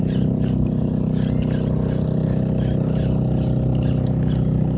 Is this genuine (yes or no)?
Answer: yes